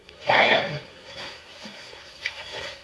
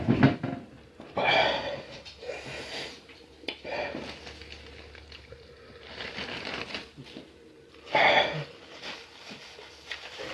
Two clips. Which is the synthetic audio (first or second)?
first